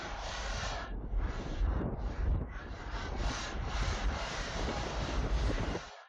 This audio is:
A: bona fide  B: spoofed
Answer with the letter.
B